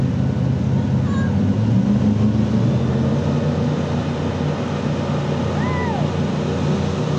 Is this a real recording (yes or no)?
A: yes